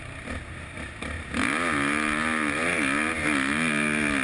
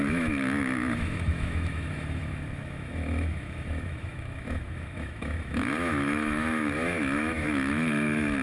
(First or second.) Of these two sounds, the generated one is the second